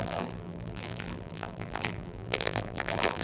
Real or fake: fake